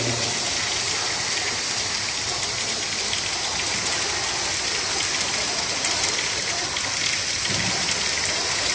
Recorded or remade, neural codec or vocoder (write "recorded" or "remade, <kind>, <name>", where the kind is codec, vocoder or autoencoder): recorded